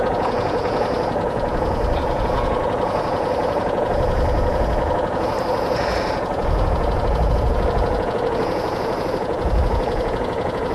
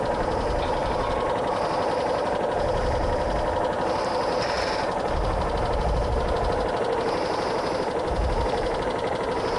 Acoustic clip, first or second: second